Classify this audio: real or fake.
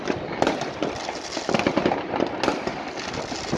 real